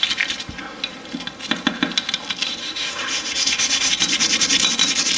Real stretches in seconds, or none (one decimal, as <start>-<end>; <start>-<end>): 0.0-2.6; 3.9-5.2